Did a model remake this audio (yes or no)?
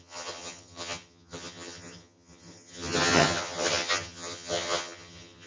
yes